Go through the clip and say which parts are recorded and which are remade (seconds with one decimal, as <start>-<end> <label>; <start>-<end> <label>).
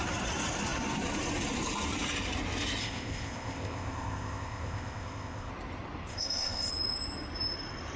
0.0-2.8 recorded; 2.8-5.5 remade; 5.5-6.1 recorded; 6.1-6.7 remade; 6.7-8.0 recorded